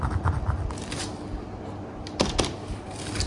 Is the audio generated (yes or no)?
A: no